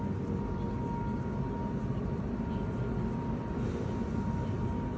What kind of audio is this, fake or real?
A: real